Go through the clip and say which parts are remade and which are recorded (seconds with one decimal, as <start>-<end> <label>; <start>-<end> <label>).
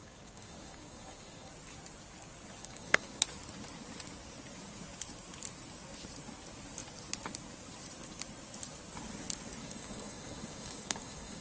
0.0-1.5 remade; 1.5-2.6 recorded; 2.6-3.2 remade; 3.2-9.6 recorded; 9.6-11.4 remade